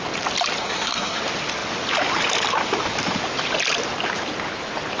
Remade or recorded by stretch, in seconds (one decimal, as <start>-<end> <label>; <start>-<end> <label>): 0.0-0.6 recorded; 0.6-1.2 remade; 1.2-5.0 recorded